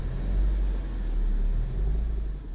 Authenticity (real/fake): real